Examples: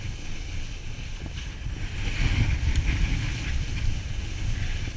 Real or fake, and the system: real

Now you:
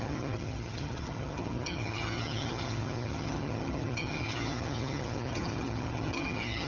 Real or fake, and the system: fake, vocoder, HiFi-GAN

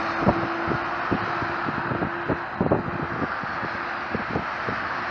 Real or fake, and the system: real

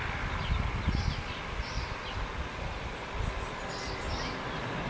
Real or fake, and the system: real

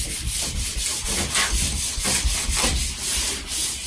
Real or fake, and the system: real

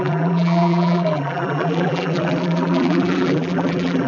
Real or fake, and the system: fake, vocoder, BigVGAN v2